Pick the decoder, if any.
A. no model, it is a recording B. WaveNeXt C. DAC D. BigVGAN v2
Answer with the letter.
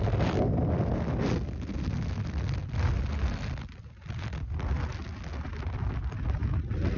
A